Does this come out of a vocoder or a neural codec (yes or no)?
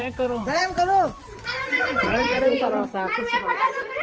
yes